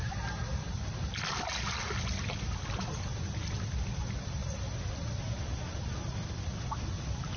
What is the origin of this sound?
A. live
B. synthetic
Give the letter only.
A